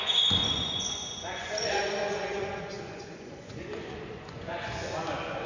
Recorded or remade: remade